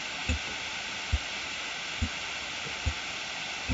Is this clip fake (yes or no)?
no